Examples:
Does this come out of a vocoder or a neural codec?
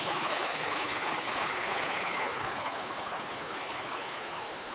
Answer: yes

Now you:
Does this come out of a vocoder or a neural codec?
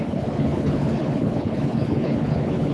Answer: yes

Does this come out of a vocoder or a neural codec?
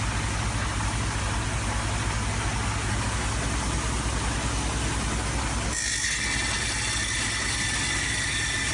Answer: no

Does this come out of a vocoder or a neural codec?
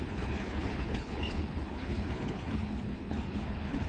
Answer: yes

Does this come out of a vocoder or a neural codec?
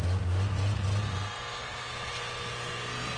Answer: no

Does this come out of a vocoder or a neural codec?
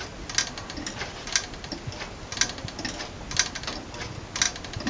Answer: no